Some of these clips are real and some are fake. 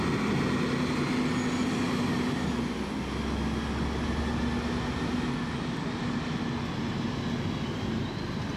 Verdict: real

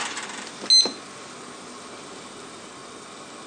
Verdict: real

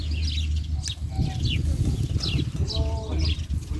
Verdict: real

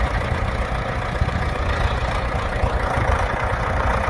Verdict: fake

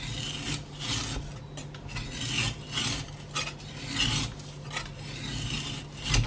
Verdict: real